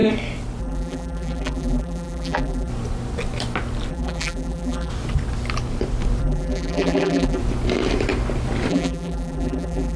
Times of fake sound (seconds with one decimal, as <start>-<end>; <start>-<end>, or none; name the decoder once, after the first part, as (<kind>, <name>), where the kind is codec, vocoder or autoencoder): 0.6-2.7 (vocoder, BigVGAN v2); 3.9-4.9; 6.2-7.4; 8.7-10.0